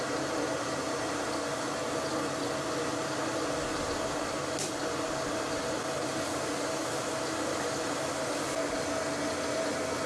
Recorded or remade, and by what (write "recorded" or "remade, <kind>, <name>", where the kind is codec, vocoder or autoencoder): recorded